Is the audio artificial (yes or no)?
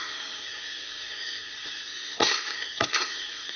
yes